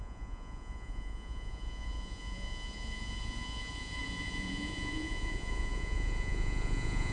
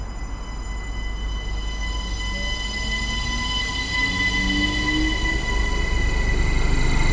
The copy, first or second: first